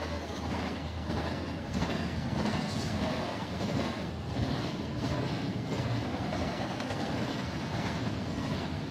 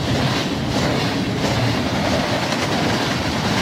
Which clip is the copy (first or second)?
first